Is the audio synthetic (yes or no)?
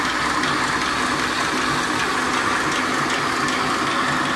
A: no